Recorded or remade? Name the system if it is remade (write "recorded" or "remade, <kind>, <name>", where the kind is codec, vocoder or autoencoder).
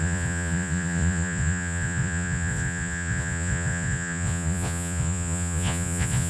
remade, vocoder, Vocos